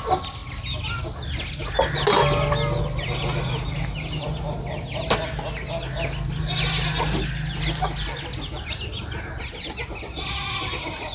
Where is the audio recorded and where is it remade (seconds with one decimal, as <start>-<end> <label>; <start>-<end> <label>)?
0.0-11.1 recorded